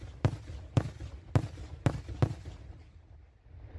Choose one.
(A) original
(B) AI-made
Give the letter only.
A